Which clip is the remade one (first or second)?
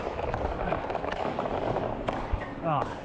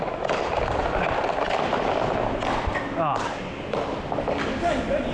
first